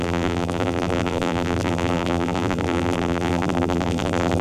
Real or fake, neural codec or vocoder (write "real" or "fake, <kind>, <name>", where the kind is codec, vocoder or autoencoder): fake, vocoder, BigVGAN v2